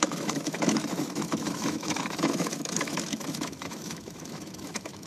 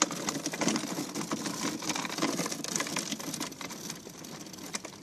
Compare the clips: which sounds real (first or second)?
second